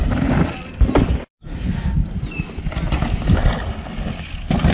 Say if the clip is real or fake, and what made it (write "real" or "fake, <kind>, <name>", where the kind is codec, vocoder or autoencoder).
real